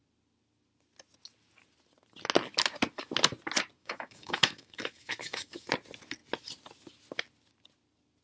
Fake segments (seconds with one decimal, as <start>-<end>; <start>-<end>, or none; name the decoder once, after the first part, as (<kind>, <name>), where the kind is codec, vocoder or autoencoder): 3.8-5.7 (autoencoder, DAC-VAE)